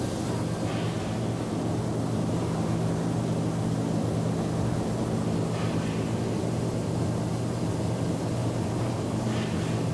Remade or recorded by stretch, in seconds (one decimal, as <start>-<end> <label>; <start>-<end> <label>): 0.0-9.9 recorded